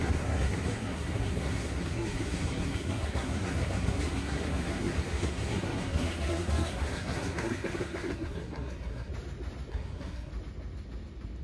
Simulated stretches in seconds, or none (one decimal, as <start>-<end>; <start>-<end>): 0.0-9.1; 9.7-10.3